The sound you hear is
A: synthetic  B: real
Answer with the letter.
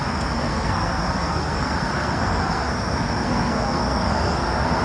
A